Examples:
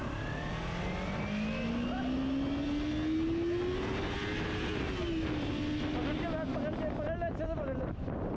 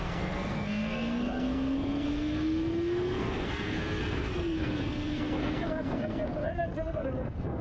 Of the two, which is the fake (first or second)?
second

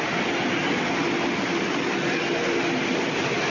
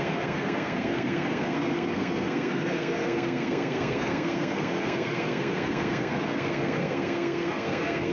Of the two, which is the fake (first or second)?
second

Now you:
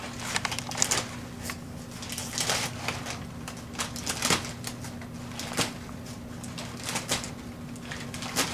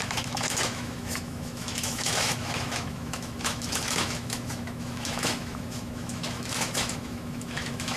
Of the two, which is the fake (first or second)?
second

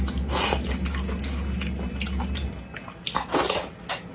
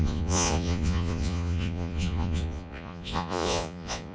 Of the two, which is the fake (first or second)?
second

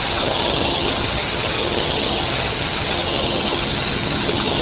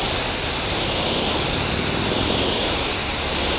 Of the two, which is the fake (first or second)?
first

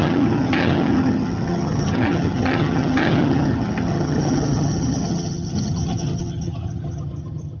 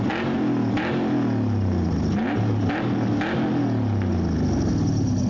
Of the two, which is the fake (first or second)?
first